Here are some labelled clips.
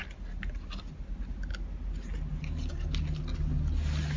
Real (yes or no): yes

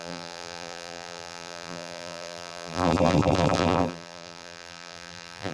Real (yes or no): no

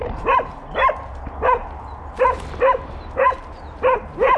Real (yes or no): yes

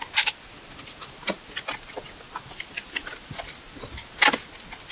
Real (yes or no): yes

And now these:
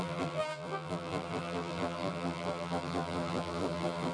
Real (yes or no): no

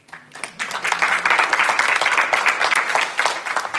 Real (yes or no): yes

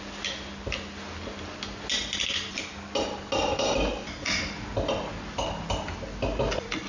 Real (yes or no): yes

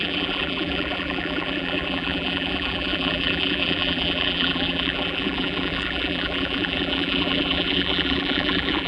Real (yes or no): no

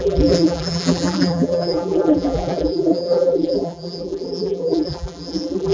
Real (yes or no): no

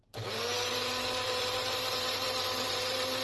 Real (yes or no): no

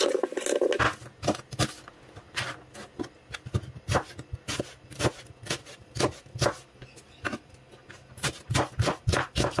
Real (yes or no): yes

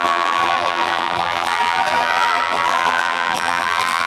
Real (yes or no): no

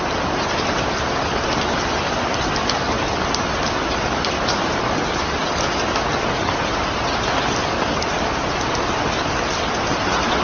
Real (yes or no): yes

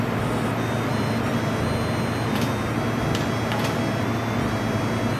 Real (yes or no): yes